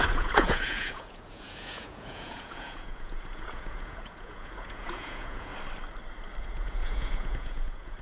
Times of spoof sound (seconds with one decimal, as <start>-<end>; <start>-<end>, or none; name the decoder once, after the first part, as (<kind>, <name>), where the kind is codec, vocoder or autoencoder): 0.0-5.5 (vocoder, Vocos); 6.4-8.0